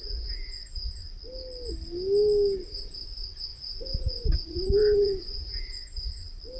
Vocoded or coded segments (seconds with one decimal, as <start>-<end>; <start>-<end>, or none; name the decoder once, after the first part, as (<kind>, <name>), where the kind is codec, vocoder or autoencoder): 3.5-5.6 (vocoder, Vocos)